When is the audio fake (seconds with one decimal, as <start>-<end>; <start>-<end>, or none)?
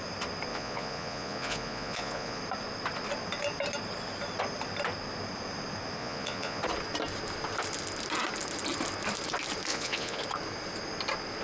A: 0.5-2.4; 6.0-6.6; 9.7-10.2